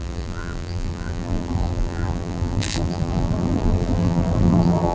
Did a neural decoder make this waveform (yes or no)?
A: yes